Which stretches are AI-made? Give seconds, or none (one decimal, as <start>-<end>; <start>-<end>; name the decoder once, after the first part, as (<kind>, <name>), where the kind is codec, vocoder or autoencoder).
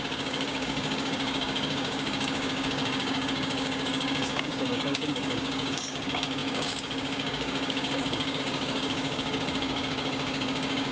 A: 0.0-10.9 (codec, DAC)